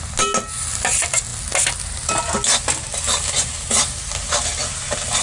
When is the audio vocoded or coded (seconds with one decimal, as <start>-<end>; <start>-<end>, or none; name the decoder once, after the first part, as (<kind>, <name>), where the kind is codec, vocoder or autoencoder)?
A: none